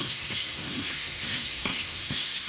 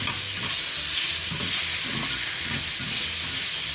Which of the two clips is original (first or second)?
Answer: second